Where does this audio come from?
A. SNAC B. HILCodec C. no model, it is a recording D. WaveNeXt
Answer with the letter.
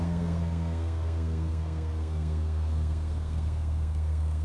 A